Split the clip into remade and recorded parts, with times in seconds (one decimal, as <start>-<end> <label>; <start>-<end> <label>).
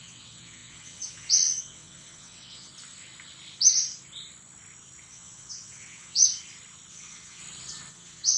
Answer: 0.0-2.7 remade; 2.7-5.1 recorded; 5.1-6.2 remade; 6.2-6.9 recorded; 6.9-7.4 remade; 7.4-7.9 recorded; 7.9-8.4 remade